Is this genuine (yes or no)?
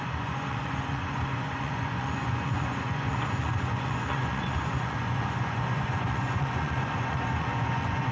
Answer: no